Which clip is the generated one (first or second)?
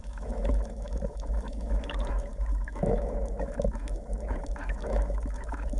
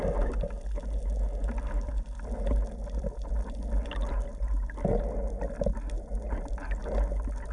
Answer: first